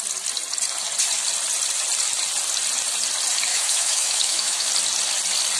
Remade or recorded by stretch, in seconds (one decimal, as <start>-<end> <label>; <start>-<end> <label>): 0.0-3.5 recorded; 3.5-4.7 remade; 4.7-5.6 recorded